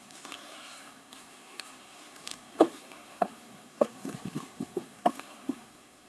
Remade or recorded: remade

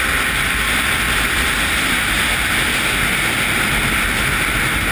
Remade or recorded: recorded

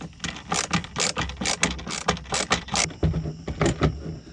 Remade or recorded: recorded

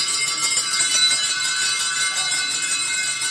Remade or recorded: recorded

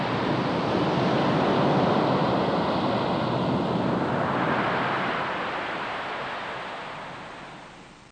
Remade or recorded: recorded